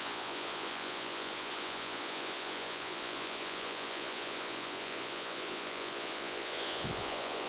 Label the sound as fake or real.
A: fake